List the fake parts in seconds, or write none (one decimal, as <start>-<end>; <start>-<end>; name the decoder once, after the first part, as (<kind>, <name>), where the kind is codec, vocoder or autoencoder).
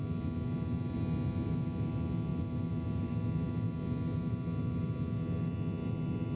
none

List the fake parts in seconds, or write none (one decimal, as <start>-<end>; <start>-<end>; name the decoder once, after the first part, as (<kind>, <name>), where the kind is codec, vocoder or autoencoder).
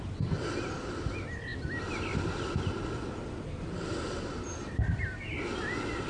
none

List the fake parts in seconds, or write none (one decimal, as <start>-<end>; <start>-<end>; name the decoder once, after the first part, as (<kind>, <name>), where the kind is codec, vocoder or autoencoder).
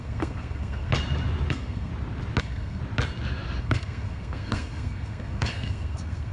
0.0-0.9 (codec, SNAC); 1.5-1.9; 2.4-2.8; 3.6-6.3